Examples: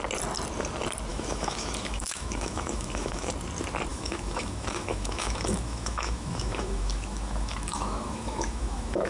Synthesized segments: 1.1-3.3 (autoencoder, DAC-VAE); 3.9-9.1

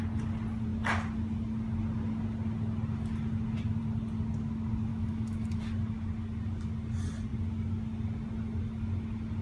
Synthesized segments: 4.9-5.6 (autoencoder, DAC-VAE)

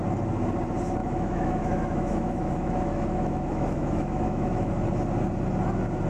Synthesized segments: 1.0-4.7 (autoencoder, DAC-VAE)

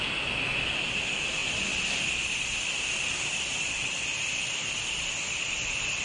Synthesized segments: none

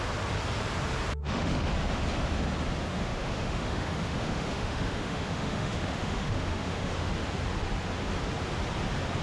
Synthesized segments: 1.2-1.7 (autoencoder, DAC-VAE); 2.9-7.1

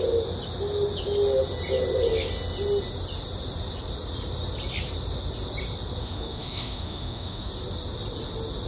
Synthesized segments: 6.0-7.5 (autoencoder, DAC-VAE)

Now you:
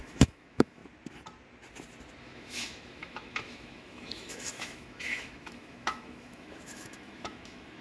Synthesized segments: 0.0-0.8 (autoencoder, DAC-VAE); 2.2-7.8